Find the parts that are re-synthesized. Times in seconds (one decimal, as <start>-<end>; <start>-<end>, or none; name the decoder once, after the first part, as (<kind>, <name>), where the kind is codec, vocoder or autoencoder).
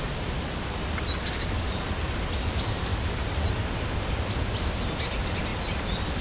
5.5-6.2 (vocoder, BigVGAN v2)